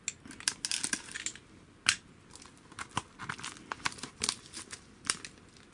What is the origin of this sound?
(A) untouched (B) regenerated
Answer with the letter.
A